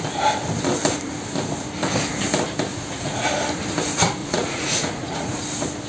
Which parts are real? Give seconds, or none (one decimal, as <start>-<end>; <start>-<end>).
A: 0.0-2.7; 3.3-4.2; 5.4-5.9